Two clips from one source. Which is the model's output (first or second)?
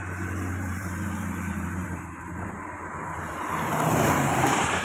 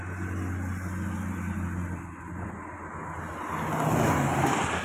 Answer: first